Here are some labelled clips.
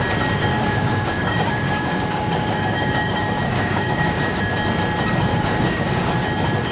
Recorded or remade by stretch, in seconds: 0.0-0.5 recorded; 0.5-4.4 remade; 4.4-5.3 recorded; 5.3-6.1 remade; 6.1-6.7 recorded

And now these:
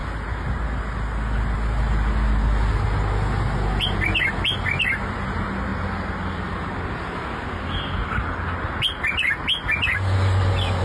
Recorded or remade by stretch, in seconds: 0.0-10.8 recorded

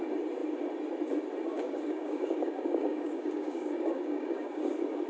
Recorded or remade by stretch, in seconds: 0.0-1.5 recorded; 1.5-4.6 remade; 4.6-5.1 recorded

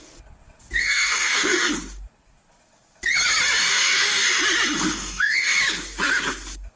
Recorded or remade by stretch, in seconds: 0.0-0.8 recorded; 0.8-1.7 remade; 1.7-3.6 recorded; 3.6-4.4 remade; 4.4-4.9 recorded; 4.9-5.6 remade; 5.6-6.8 recorded

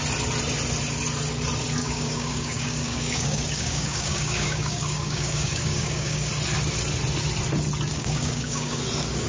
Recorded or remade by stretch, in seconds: 0.0-1.8 recorded; 1.8-6.3 remade; 6.3-7.9 recorded; 7.9-8.8 remade; 8.8-9.3 recorded